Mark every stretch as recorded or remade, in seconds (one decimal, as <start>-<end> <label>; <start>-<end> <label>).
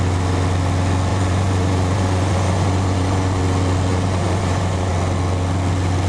0.0-1.1 recorded; 1.1-3.4 remade; 3.4-3.9 recorded; 3.9-4.9 remade; 4.9-6.1 recorded